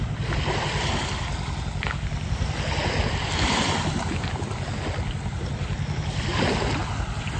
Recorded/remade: recorded